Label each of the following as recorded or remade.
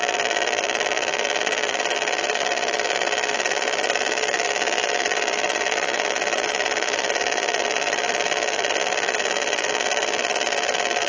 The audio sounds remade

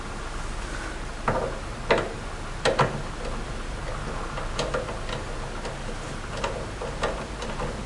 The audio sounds recorded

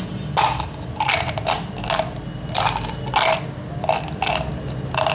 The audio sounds recorded